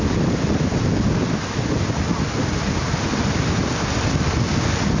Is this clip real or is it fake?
real